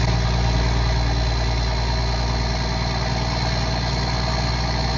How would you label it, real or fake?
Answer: real